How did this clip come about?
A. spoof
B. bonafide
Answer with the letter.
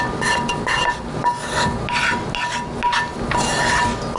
B